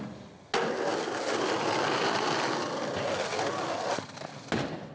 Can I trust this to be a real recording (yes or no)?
yes